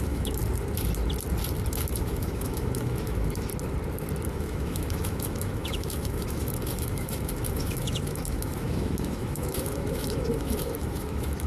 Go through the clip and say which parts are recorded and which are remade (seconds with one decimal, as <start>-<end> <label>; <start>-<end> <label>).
0.0-0.4 remade; 0.4-1.7 recorded; 1.7-3.5 remade; 3.5-4.3 recorded; 4.3-11.5 remade